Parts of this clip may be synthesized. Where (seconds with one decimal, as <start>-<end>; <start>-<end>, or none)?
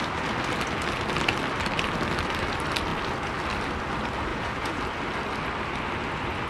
4.3-4.8